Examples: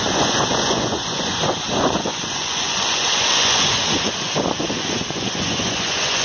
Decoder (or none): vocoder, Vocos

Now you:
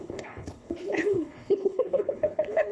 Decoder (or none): codec, HILCodec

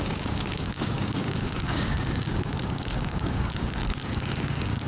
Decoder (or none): codec, DAC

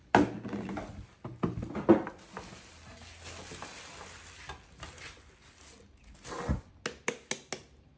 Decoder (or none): none